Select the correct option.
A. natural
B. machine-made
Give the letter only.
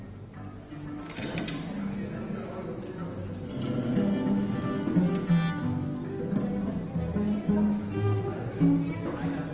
A